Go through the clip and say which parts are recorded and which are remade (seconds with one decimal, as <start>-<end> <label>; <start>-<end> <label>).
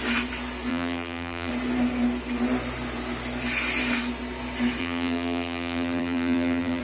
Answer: 0.0-0.7 recorded; 0.7-1.5 remade; 1.5-4.8 recorded; 4.8-6.8 remade